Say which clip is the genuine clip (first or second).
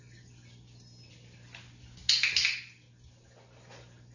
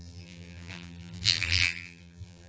first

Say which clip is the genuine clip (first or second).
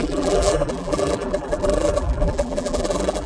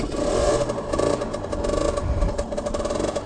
second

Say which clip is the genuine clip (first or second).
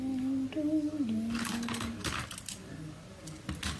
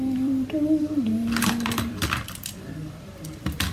first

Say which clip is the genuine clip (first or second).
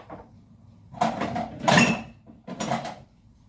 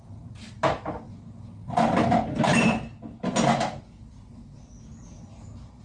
second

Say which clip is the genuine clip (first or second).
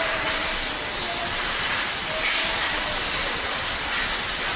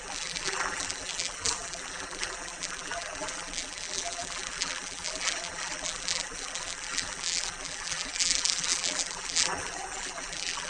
first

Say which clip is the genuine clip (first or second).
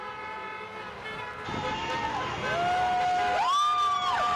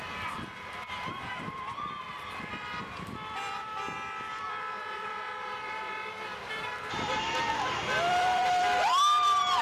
first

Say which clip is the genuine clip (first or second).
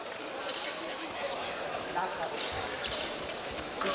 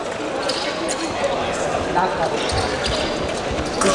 second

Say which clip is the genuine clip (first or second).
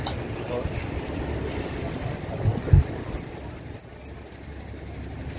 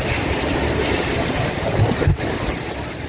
first